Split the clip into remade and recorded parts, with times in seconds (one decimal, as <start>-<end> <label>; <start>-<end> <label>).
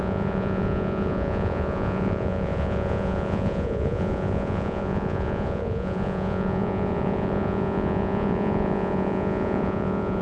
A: 0.0-10.2 remade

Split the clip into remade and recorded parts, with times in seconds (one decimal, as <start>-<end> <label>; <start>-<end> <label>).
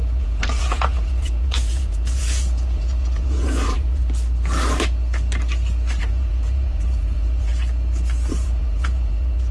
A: 0.0-4.0 remade; 4.0-6.0 recorded; 6.0-7.5 remade; 7.5-8.3 recorded; 8.3-9.5 remade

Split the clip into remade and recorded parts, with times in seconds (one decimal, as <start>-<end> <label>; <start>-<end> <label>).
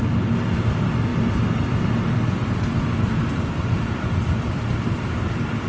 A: 0.0-5.7 recorded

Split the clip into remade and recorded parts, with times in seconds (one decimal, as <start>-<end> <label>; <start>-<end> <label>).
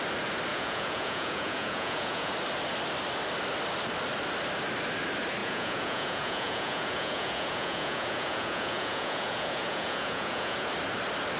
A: 0.0-0.5 recorded; 0.5-2.3 remade; 2.3-5.4 recorded; 5.4-10.7 remade; 10.7-11.4 recorded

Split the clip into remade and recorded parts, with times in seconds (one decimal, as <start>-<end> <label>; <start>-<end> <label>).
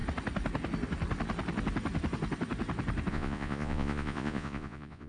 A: 0.0-3.1 recorded; 3.1-5.1 remade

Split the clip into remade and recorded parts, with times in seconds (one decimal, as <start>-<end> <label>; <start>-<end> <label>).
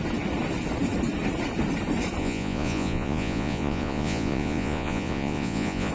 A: 0.0-2.2 recorded; 2.2-5.9 remade